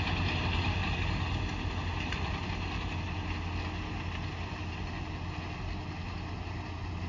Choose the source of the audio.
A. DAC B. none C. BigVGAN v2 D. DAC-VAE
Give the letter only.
B